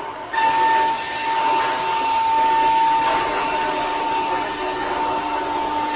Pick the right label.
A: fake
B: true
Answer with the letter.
B